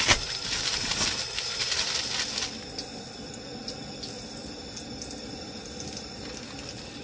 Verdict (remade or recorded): recorded